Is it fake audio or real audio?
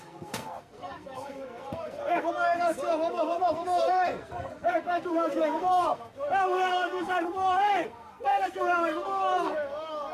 fake